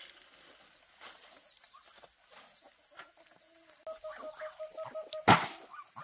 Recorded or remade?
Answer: recorded